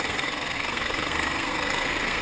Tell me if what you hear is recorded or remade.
remade